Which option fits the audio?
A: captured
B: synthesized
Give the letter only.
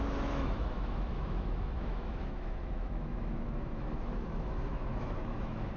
B